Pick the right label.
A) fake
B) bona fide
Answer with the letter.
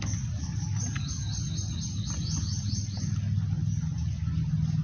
B